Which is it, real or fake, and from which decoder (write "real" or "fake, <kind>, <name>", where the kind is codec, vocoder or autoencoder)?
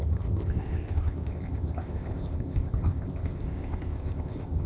fake, codec, ZipCodec